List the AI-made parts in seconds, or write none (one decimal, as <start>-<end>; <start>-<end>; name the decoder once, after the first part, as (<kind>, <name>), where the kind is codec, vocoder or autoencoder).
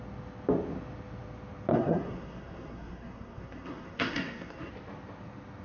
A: 1.7-4.7 (codec, SNAC)